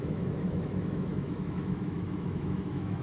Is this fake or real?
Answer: fake